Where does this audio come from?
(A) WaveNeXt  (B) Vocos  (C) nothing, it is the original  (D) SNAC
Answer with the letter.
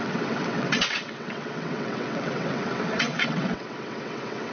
A